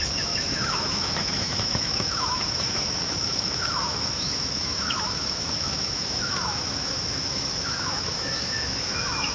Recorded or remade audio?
remade